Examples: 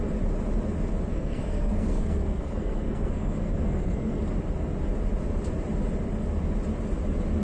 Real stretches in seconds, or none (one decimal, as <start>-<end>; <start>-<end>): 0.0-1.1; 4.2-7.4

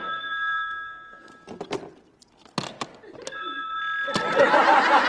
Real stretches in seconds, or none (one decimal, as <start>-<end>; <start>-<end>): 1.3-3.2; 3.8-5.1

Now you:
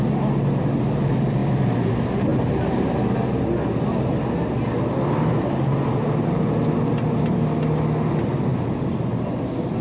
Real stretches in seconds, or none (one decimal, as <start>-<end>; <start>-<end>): 0.0-9.8

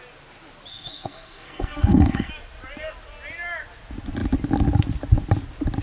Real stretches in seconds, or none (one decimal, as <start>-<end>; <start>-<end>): 0.0-0.7; 2.3-5.8

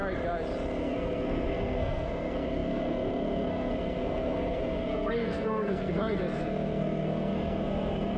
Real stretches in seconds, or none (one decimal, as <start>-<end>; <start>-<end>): 0.0-0.8

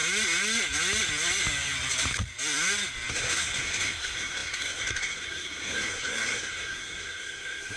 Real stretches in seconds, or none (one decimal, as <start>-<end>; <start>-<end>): 0.0-3.1

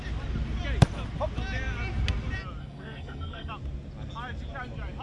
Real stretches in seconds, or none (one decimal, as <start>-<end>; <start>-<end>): 0.0-2.6; 3.5-5.0

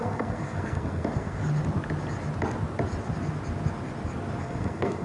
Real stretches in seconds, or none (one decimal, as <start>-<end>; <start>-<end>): 1.4-4.4